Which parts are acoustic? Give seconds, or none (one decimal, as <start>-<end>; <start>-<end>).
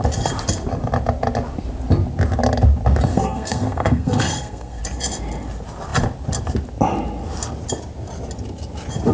0.0-3.1; 4.8-9.1